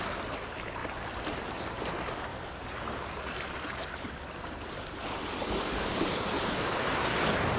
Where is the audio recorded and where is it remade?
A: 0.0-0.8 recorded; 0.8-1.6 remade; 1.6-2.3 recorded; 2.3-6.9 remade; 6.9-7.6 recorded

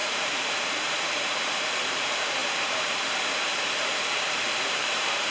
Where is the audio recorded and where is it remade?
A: 0.0-5.3 remade

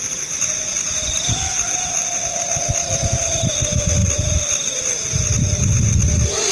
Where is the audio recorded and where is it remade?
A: 0.0-2.8 recorded; 2.8-3.5 remade; 3.5-6.5 recorded

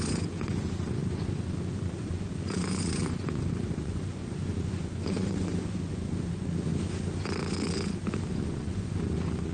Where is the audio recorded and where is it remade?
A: 0.0-6.7 remade; 6.7-8.3 recorded; 8.3-9.5 remade

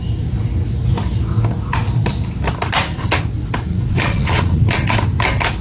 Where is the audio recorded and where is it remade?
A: 0.0-3.7 recorded; 3.7-4.6 remade; 4.6-5.6 recorded

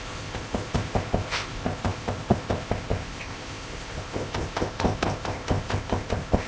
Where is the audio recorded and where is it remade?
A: 0.0-6.5 remade

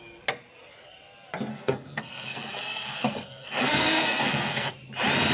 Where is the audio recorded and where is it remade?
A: 0.0-1.5 recorded; 1.5-4.7 remade; 4.7-5.3 recorded

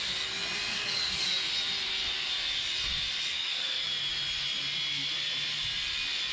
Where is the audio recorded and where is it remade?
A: 0.0-0.7 recorded; 0.7-1.3 remade; 1.3-3.3 recorded; 3.3-3.9 remade; 3.9-6.3 recorded